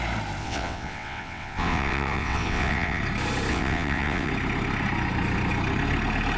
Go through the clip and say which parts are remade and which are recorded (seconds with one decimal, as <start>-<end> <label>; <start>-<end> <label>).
0.0-0.4 recorded; 0.4-3.0 remade; 3.0-3.5 recorded; 3.5-4.3 remade; 4.3-6.4 recorded